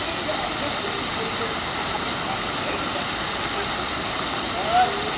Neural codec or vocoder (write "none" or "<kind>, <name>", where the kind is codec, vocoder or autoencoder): none